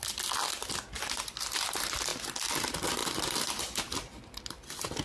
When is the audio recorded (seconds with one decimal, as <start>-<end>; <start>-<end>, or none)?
0.0-5.0